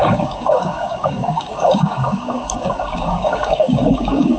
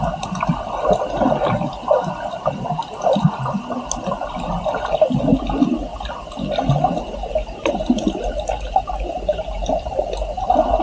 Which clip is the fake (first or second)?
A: first